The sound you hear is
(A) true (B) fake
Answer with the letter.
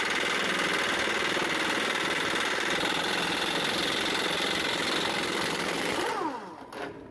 A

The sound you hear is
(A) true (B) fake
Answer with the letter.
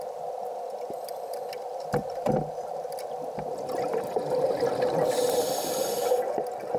A